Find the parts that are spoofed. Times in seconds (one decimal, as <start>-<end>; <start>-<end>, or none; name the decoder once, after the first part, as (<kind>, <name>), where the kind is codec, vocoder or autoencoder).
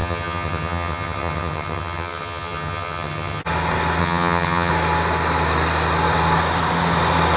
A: 0.0-3.4 (vocoder, HiFi-GAN); 4.0-4.7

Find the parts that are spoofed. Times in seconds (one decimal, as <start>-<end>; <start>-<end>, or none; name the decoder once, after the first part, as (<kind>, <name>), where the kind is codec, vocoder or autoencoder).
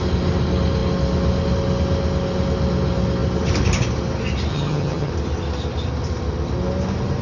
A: 4.5-5.1 (vocoder, HiFi-GAN)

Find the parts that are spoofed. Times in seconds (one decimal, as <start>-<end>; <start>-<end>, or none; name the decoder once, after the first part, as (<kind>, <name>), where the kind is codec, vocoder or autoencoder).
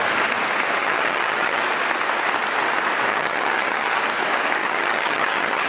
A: 0.8-1.6 (vocoder, HiFi-GAN); 3.1-4.0; 4.6-5.7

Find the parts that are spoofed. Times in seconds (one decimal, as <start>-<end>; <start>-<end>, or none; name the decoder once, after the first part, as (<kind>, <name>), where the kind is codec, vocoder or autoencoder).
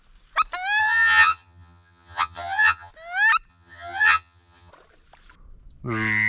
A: 0.8-2.9 (vocoder, HiFi-GAN); 3.5-4.7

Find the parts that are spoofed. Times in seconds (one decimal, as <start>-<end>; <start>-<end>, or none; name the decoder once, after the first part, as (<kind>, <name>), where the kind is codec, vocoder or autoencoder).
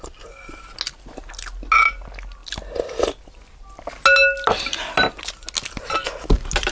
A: none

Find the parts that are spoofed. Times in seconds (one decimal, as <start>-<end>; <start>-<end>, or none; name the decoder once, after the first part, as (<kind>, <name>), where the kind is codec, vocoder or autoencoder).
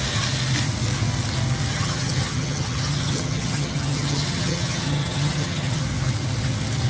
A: 1.7-5.8 (vocoder, HiFi-GAN)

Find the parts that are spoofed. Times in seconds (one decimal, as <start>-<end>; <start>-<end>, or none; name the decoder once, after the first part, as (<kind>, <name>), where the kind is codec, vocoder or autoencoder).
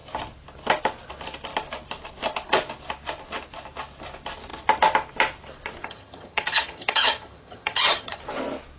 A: 5.8-8.2 (vocoder, HiFi-GAN)